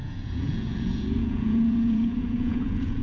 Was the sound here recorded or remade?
remade